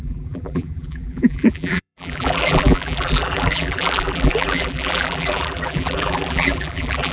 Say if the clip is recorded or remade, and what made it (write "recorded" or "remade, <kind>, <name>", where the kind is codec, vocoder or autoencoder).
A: remade, vocoder, BigVGAN v2